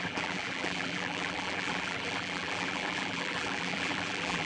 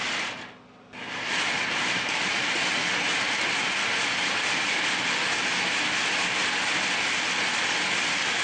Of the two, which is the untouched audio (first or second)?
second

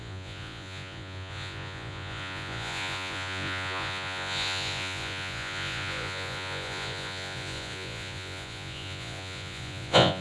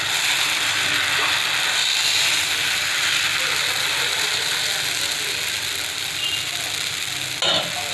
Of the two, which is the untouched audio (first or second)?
second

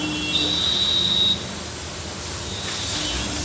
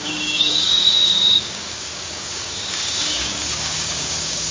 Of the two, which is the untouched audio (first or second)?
first